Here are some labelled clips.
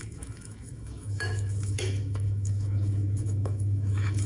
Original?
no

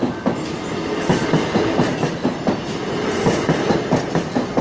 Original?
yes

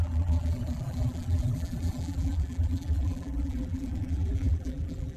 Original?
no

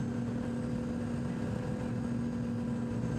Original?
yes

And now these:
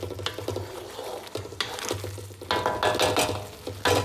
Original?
yes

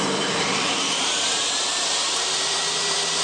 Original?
no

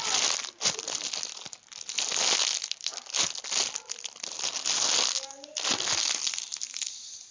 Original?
yes